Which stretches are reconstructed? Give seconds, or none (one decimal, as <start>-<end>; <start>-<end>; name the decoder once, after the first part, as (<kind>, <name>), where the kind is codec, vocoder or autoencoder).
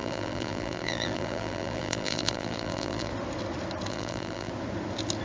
0.0-3.1 (vocoder, BigVGAN v2); 3.9-4.5